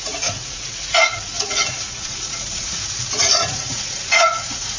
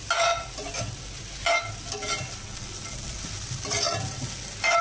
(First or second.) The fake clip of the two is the first